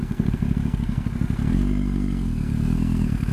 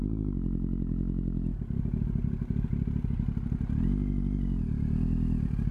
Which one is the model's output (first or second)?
first